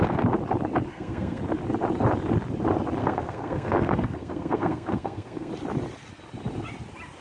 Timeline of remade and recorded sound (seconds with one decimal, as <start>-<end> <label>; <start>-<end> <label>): 0.0-0.9 recorded; 0.9-1.4 remade; 1.4-3.0 recorded; 3.0-5.5 remade; 5.5-7.2 recorded